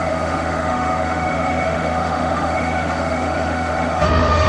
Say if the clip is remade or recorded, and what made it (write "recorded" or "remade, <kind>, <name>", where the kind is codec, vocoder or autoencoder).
remade, autoencoder, DAC-VAE